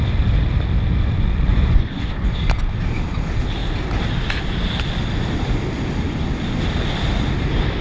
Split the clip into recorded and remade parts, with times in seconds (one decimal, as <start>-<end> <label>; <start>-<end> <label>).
0.0-1.5 recorded; 1.5-2.1 remade; 2.1-7.8 recorded